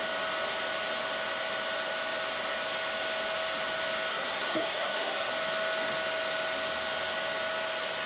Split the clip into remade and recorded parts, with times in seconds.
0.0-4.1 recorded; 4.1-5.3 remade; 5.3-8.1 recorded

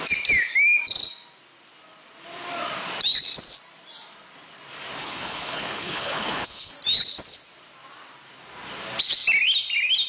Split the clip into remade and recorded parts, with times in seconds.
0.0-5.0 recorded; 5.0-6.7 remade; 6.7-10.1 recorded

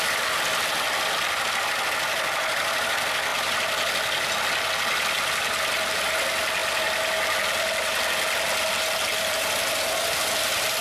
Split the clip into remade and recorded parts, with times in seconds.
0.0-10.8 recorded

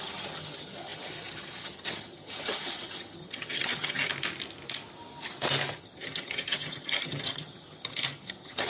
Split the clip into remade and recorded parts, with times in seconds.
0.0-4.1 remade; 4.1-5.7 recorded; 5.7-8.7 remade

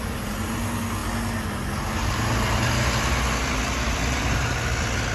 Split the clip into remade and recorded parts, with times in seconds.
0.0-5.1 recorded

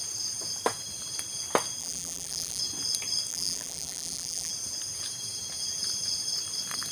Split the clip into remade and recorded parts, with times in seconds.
0.0-1.8 recorded; 1.8-2.6 remade; 2.6-3.3 recorded; 3.3-4.5 remade; 4.5-6.9 recorded

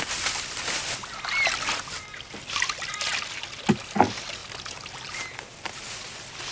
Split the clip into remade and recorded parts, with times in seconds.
0.0-6.5 recorded

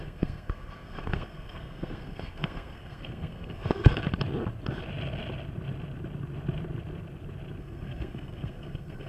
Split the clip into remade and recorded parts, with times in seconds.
0.0-4.0 remade; 4.0-7.6 recorded; 7.6-9.1 remade